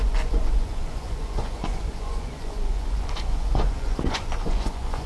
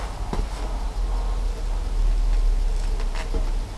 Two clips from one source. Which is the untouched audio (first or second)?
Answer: second